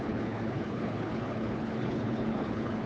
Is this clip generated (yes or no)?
yes